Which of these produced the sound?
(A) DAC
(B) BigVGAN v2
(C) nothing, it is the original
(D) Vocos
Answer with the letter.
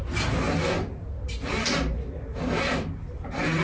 C